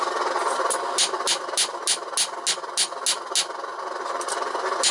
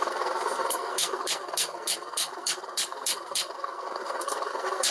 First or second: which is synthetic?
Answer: second